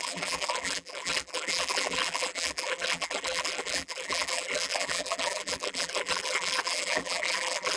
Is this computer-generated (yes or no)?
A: yes